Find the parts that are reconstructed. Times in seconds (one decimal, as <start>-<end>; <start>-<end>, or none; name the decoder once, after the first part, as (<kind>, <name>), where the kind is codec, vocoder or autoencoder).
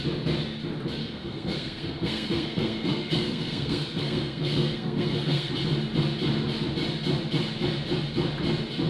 1.0-5.5 (codec, SNAC)